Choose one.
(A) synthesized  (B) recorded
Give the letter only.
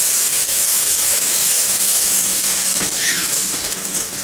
A